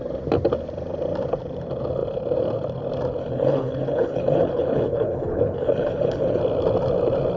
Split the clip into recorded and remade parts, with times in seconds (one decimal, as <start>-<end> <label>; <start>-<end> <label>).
0.0-3.2 recorded; 3.2-6.4 remade; 6.4-7.4 recorded